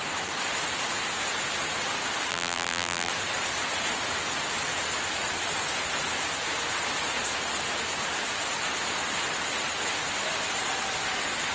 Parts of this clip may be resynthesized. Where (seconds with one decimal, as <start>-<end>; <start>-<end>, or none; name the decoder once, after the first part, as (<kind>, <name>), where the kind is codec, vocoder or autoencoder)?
2.3-3.1 (vocoder, BigVGAN v2)